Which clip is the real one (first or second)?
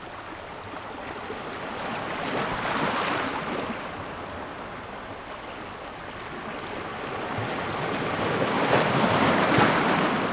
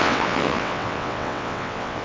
first